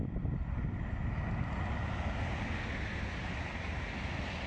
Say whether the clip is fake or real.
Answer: real